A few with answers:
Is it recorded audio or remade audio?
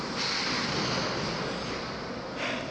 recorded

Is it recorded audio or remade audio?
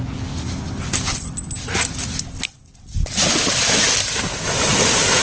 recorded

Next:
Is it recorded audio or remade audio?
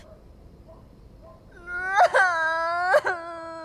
recorded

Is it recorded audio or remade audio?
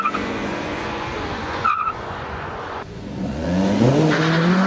remade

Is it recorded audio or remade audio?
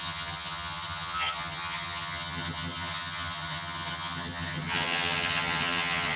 remade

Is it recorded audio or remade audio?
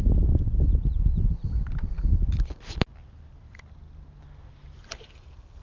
recorded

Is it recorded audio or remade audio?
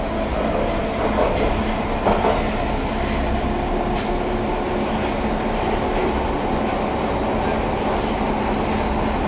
recorded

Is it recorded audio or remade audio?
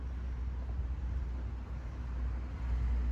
recorded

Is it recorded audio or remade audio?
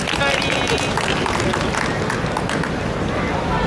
recorded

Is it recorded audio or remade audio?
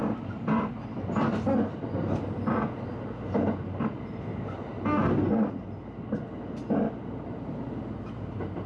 recorded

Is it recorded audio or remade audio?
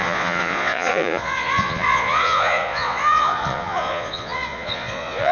remade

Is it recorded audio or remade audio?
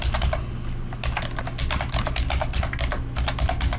recorded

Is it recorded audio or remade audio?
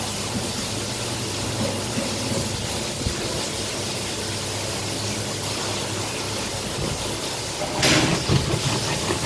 recorded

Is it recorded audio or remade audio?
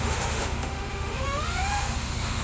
remade